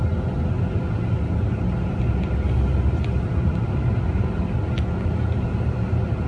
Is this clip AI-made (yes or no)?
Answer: no